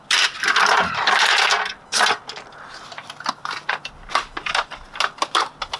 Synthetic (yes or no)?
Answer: no